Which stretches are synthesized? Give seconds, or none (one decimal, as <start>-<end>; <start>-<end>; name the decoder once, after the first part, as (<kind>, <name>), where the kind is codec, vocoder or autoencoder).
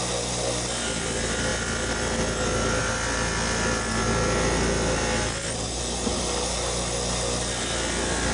none